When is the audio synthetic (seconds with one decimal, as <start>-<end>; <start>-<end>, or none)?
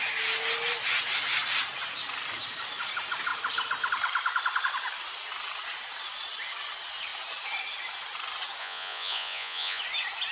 8.6-9.8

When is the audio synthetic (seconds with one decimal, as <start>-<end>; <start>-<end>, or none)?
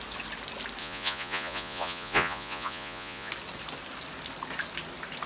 0.8-3.3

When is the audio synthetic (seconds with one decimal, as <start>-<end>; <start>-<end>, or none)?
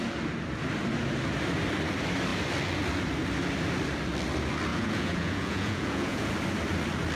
4.7-6.3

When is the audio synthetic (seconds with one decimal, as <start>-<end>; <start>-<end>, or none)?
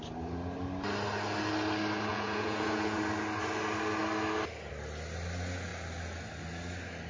2.1-3.0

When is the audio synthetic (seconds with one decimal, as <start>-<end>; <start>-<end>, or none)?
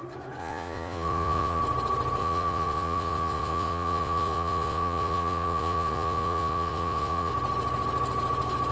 0.4-1.6; 2.2-7.3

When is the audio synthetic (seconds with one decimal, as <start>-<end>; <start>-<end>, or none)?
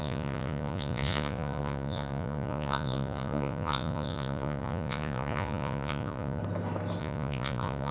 0.0-6.4; 7.0-7.9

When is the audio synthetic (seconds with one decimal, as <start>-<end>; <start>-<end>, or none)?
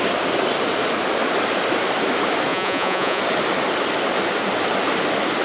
2.5-3.2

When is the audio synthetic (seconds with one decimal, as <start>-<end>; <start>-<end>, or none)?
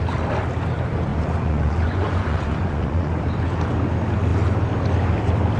1.1-3.1